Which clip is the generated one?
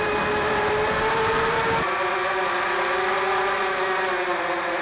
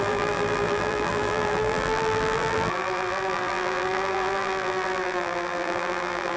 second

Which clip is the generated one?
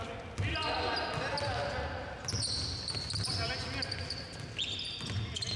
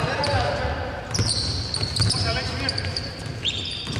second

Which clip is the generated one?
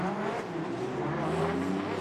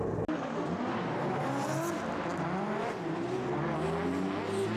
first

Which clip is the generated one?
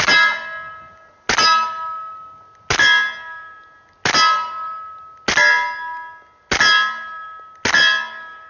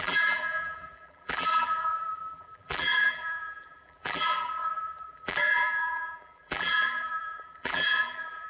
second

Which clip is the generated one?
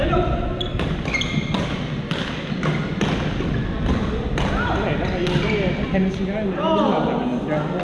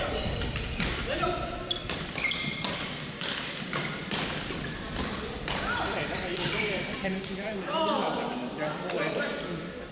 second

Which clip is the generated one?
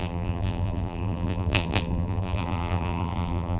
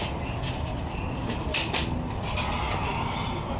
first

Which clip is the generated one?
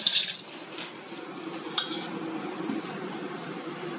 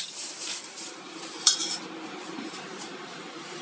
second